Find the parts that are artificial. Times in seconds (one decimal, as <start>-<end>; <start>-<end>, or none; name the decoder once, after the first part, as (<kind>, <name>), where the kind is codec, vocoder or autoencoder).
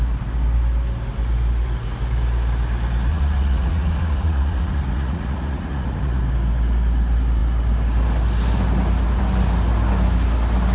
3.1-6.2 (vocoder, Vocos)